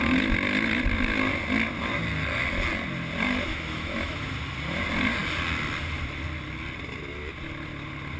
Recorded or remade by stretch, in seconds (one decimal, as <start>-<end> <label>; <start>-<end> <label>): 0.0-3.5 recorded; 3.5-4.3 remade; 4.3-8.2 recorded